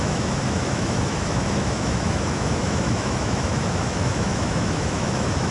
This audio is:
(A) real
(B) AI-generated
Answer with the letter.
B